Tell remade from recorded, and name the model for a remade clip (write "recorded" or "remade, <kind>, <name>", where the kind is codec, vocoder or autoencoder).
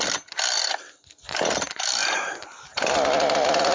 recorded